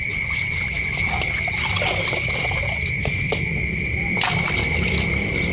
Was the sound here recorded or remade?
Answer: recorded